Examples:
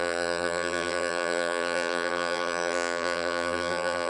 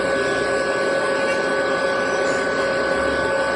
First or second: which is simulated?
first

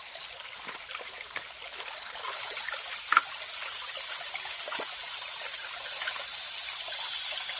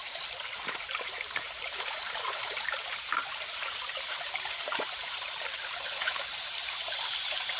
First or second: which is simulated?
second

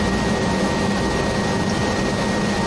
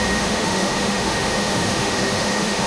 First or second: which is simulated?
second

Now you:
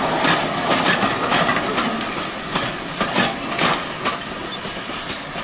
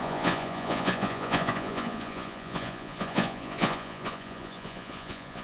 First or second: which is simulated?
second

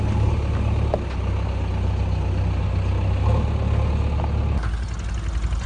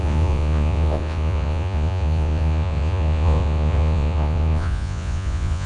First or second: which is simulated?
second